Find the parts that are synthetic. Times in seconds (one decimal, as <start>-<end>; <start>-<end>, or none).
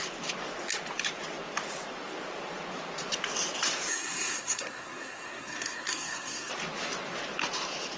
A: 3.9-6.5